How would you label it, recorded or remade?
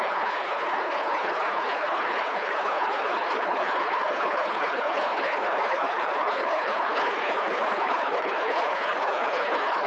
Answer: remade